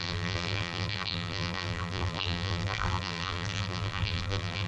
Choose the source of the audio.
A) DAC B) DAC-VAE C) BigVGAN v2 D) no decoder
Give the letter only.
C